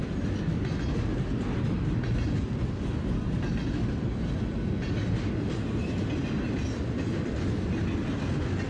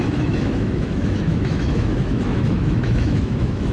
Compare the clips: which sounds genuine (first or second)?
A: first